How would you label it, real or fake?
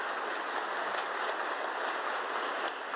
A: real